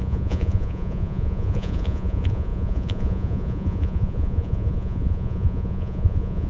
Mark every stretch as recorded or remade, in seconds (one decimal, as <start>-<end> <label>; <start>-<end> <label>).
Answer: 0.0-6.5 remade